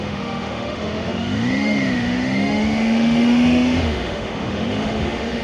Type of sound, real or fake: fake